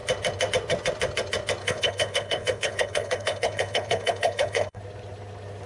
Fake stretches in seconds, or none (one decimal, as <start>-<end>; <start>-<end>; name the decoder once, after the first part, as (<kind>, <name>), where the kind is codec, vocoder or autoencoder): 1.6-4.8 (codec, HILCodec)